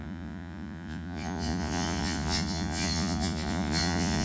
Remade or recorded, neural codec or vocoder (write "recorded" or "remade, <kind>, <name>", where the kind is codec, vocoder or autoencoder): remade, vocoder, Vocos